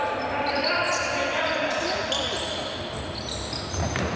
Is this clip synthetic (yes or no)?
no